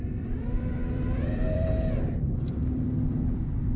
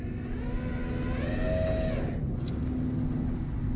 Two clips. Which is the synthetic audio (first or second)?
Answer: first